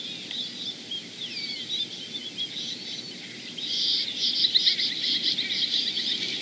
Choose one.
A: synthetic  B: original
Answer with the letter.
B